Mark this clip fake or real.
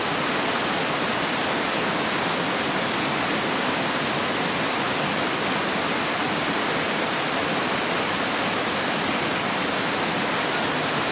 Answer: real